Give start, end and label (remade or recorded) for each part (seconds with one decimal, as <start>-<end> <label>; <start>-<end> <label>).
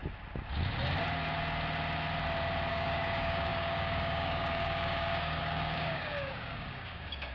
0.0-2.7 recorded; 2.7-7.3 remade